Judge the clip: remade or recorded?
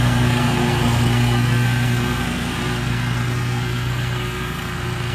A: remade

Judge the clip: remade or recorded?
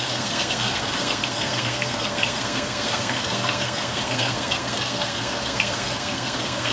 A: remade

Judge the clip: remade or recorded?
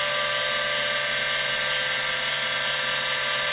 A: recorded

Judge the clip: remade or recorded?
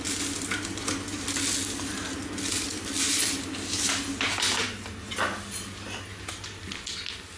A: recorded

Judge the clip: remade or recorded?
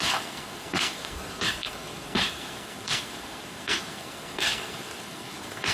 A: remade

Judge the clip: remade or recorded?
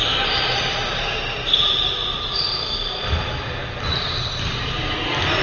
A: recorded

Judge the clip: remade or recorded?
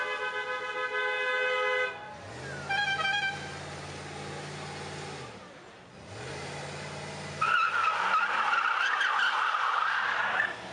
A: recorded